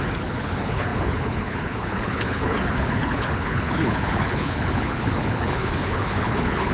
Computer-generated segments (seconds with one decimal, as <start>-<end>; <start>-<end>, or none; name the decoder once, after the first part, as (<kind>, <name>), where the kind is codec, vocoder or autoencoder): 0.0-6.7 (codec, HILCodec)